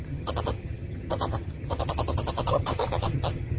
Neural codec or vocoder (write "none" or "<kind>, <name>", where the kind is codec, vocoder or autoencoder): vocoder, HiFi-GAN